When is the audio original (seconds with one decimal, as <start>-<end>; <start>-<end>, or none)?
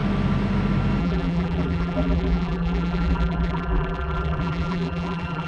0.0-1.0